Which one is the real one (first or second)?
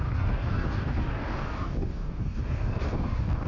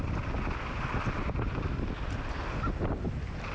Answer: second